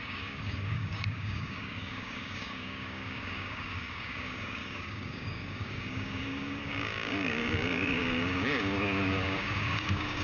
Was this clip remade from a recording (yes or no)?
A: yes